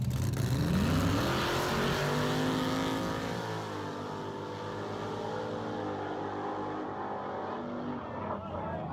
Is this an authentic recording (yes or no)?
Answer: yes